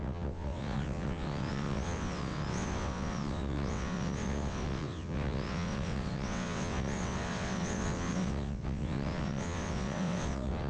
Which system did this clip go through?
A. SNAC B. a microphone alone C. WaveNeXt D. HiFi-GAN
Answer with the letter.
C